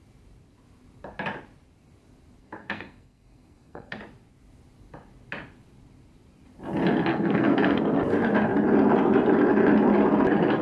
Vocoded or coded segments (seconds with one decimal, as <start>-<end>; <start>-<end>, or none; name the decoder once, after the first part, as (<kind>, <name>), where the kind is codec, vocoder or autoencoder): 2.4-4.0 (codec, SNAC); 7.1-7.8